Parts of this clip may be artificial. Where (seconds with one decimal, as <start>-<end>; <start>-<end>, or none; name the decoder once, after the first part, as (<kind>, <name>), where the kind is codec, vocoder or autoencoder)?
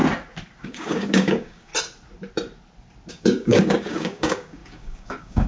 0.6-1.7 (codec, DAC); 3.1-5.5